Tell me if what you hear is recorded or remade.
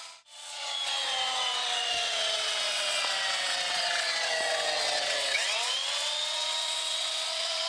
remade